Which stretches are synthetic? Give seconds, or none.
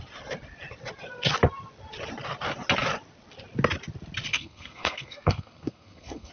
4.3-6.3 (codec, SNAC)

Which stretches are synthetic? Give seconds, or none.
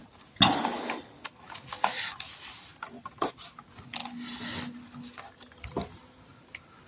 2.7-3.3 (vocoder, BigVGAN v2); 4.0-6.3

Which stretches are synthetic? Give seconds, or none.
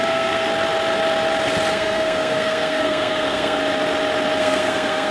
0.0-0.5 (codec, SNAC); 1.7-3.6; 4.4-5.1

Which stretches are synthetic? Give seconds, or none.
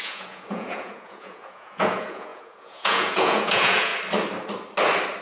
0.0-3.9 (vocoder, Vocos)